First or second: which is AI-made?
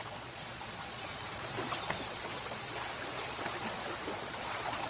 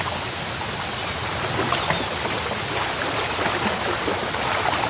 first